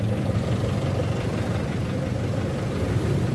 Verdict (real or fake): real